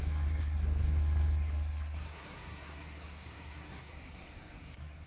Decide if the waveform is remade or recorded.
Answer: remade